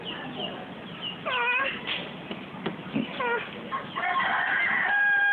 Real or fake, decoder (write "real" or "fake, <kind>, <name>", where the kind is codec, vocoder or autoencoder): real